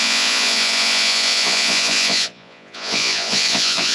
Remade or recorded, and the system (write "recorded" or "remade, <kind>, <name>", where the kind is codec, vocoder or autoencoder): remade, vocoder, Vocos